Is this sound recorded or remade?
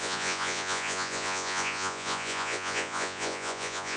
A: remade